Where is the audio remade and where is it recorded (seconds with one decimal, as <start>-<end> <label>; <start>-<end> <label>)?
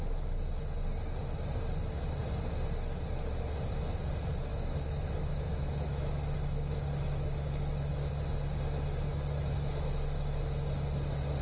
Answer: 0.0-4.5 recorded; 4.5-8.1 remade; 8.1-9.1 recorded; 9.1-10.4 remade; 10.4-11.4 recorded